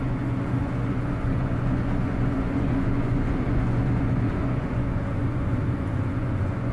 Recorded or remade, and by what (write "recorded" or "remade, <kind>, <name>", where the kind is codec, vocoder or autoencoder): remade, vocoder, Vocos